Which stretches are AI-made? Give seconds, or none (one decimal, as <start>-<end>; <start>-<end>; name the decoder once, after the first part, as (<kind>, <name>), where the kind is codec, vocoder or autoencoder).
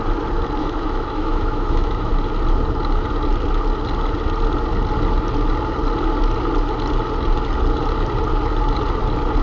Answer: 0.6-2.1 (autoencoder, DAC-VAE)